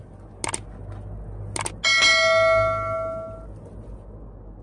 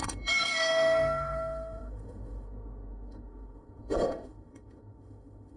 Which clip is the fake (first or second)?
second